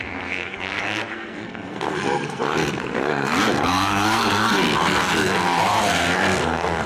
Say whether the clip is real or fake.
fake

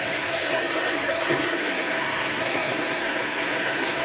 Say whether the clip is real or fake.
fake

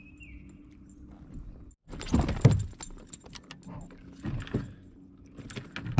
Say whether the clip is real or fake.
real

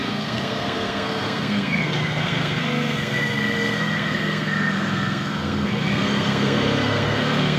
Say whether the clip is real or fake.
fake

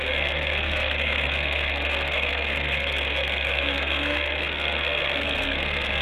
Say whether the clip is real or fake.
fake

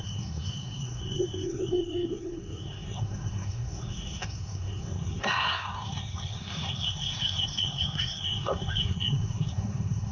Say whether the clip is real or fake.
fake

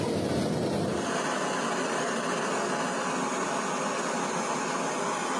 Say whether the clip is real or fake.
real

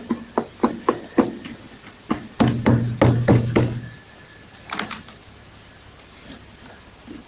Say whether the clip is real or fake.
real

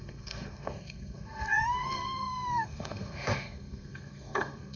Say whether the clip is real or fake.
fake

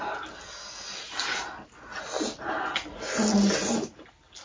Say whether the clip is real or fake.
real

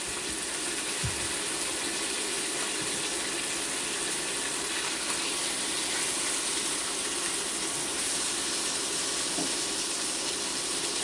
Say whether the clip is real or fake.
real